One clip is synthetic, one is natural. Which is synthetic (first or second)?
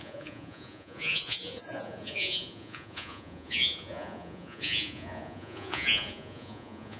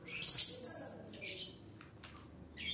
first